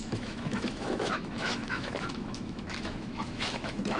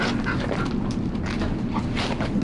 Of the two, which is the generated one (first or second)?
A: first